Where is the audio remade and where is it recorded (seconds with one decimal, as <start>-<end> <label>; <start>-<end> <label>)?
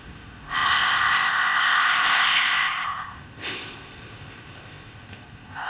0.0-5.7 remade